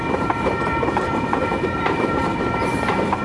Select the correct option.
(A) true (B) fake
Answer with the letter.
B